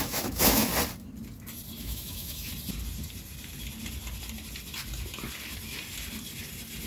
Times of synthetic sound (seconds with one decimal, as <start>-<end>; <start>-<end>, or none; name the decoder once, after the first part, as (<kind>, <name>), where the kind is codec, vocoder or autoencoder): 0.0-0.7 (autoencoder, DAC-VAE); 1.8-2.5